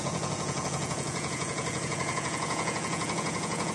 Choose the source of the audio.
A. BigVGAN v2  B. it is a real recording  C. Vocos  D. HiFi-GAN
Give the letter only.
C